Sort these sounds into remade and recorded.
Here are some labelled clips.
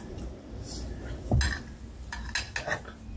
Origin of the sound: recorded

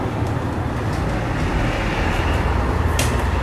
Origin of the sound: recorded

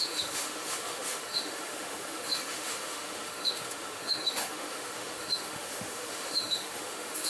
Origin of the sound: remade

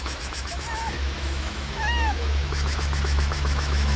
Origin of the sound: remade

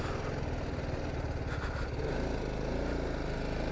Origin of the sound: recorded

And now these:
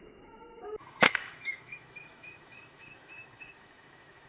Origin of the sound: remade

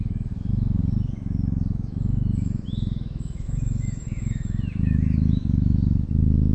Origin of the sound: remade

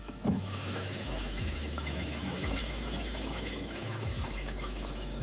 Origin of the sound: remade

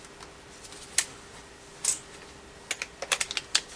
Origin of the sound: recorded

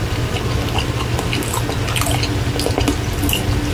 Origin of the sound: recorded